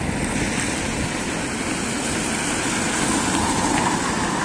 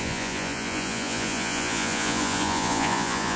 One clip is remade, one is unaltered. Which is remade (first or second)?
second